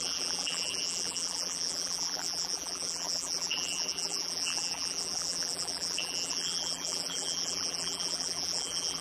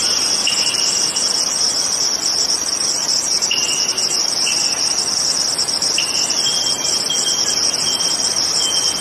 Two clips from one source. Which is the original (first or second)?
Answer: second